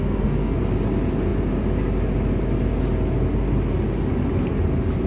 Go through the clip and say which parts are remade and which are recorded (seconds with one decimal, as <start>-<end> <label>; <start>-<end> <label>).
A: 0.0-0.6 remade; 0.6-5.1 recorded